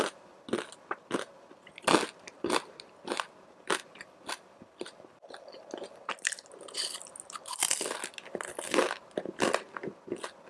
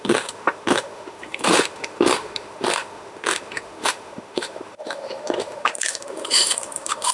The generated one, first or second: second